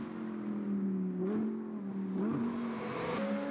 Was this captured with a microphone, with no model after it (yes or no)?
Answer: yes